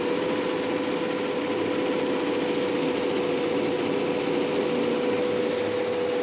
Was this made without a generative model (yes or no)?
yes